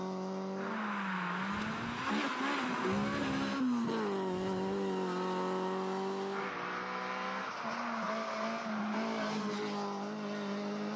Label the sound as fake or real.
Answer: real